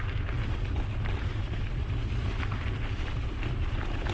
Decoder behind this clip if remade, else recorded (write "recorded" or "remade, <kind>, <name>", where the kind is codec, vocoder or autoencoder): remade, vocoder, BigVGAN v2